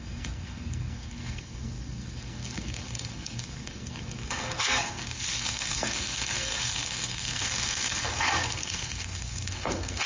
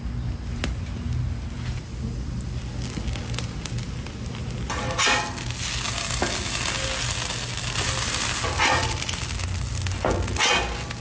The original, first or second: second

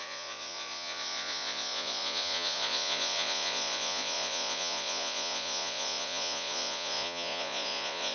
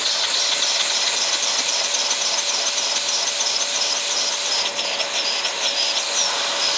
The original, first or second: second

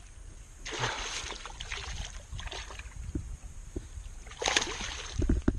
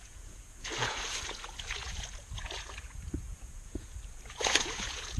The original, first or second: first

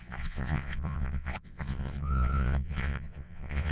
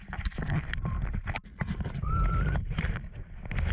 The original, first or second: second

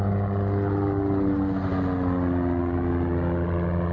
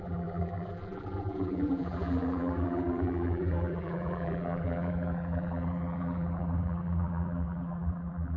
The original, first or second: first